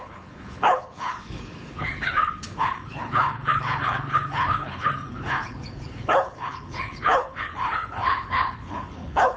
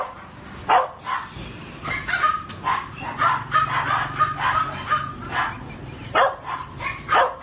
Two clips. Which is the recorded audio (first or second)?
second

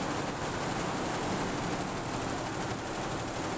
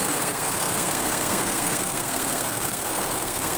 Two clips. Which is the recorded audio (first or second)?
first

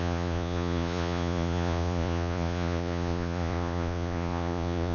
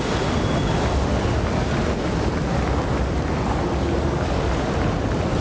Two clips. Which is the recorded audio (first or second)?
second